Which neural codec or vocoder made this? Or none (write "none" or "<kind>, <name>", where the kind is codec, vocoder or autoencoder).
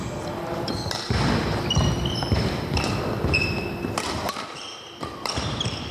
vocoder, BigVGAN v2